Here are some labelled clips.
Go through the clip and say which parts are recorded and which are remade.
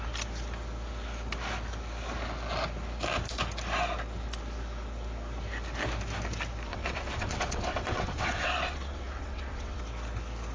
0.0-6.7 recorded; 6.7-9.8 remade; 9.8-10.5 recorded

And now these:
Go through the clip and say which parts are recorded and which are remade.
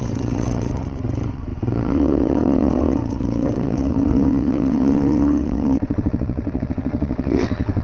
0.0-7.8 remade